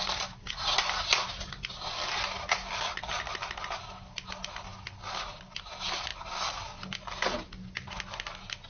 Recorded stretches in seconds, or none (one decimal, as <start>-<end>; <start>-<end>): 0.0-8.7